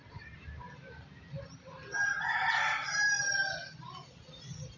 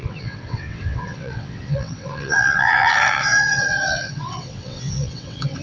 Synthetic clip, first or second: second